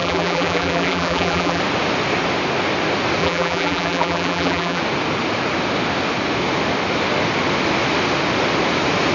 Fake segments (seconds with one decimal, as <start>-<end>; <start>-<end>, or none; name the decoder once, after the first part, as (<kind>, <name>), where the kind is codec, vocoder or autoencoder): 0.0-1.6 (vocoder, BigVGAN v2); 3.2-4.8